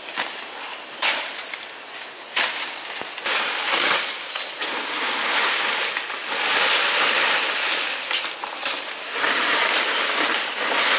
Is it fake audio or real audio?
real